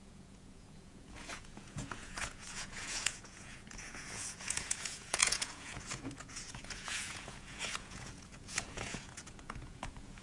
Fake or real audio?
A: fake